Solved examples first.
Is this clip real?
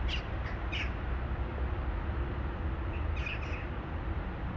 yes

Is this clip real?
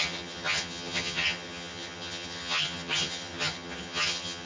no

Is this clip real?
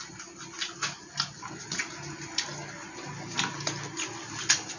yes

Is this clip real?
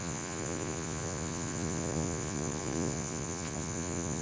no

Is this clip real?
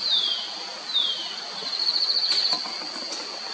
yes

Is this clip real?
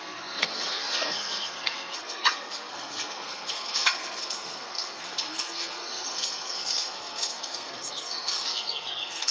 no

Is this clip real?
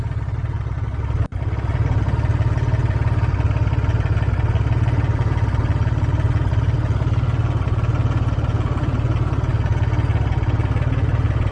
yes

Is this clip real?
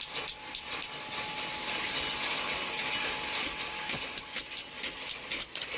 yes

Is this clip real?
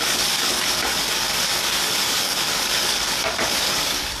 no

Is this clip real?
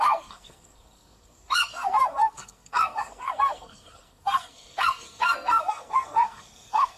no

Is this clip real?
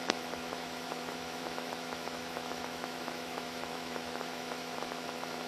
no